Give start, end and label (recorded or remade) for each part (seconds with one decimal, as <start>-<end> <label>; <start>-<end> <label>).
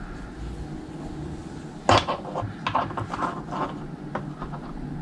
0.0-5.0 recorded